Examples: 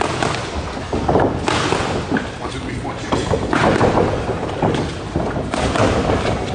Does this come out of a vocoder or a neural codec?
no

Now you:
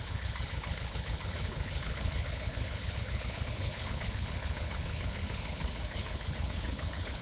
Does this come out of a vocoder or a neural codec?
yes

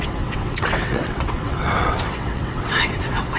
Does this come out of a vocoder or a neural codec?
yes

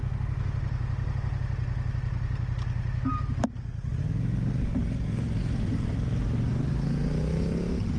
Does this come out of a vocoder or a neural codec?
no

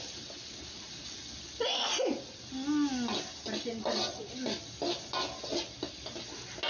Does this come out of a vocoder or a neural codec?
no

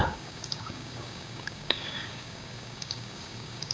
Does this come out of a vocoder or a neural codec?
yes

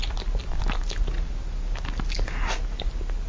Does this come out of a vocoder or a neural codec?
no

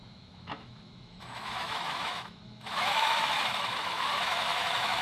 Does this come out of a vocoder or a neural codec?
yes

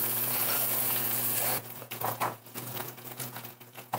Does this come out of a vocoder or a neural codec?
yes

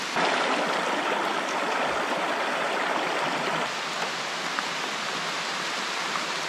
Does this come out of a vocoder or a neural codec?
no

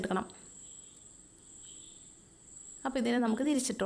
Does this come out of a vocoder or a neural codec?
yes